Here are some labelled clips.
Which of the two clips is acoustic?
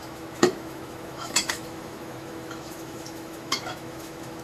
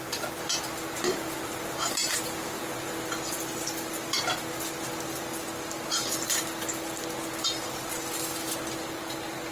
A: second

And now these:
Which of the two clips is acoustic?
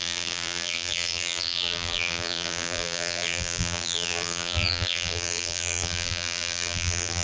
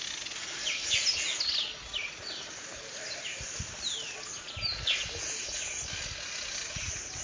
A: second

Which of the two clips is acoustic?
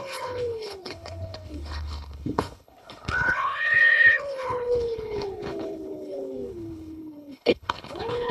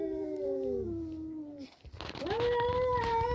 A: second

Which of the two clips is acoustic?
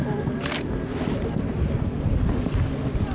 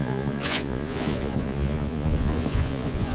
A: first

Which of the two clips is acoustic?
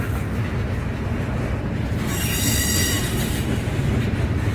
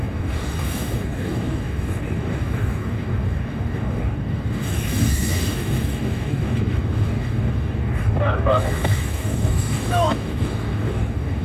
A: first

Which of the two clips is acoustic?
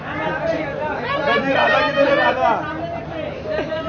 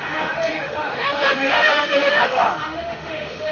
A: first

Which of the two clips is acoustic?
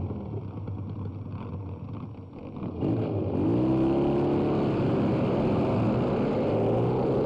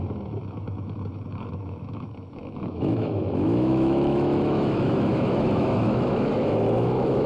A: first